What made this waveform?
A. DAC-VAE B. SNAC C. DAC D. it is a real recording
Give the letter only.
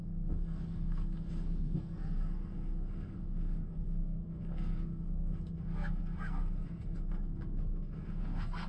B